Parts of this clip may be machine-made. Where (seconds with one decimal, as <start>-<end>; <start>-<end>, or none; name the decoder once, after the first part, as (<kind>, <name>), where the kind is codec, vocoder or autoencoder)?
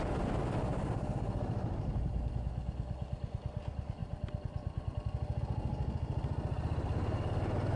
0.7-2.3 (vocoder, BigVGAN v2)